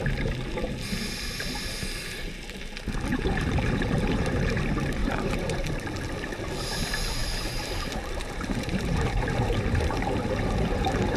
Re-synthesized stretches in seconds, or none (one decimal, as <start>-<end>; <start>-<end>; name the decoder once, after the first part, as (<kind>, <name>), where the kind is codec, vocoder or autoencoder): 3.1-4.6 (vocoder, BigVGAN v2); 5.0-5.7; 7.2-11.2